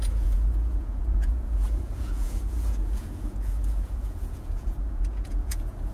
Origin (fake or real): fake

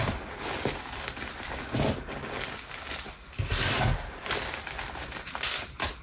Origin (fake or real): real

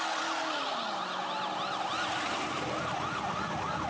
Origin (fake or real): real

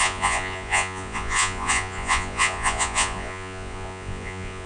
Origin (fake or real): fake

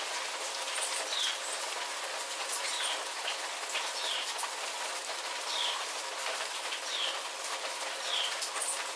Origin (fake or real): real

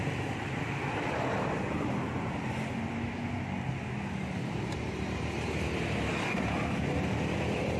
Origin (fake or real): real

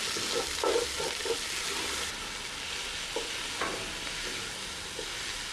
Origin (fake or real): real